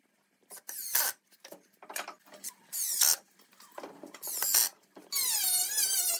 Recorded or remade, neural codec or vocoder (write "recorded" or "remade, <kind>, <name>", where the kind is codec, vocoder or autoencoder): recorded